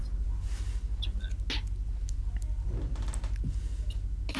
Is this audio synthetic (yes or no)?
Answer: no